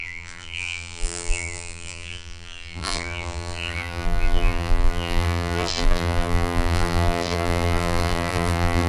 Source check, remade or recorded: remade